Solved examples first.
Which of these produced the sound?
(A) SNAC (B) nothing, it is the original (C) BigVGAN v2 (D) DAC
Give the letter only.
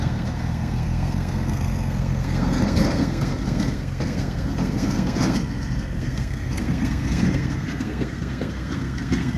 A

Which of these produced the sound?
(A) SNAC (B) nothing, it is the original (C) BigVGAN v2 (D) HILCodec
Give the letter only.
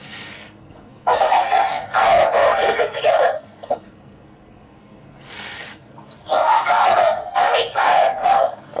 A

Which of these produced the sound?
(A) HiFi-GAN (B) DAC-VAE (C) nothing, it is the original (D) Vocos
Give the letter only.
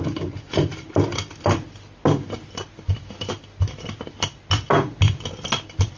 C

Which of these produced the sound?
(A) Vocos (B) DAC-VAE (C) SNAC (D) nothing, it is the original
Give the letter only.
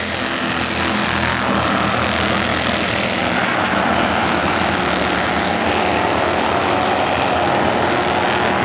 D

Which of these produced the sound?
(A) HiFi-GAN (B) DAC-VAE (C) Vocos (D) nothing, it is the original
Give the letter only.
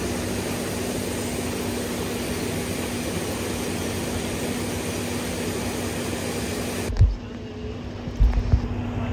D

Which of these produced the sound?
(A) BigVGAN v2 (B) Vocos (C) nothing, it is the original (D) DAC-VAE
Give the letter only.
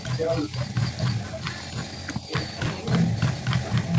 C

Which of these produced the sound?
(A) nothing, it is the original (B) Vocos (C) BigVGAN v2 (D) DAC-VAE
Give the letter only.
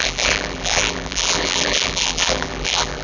C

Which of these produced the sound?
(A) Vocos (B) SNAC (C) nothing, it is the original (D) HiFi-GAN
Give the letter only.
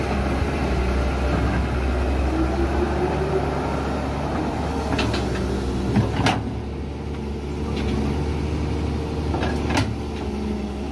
C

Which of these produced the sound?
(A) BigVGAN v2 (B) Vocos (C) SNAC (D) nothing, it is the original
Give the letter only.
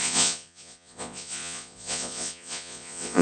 B